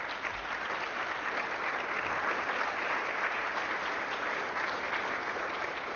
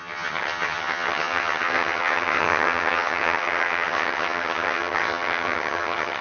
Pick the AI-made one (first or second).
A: second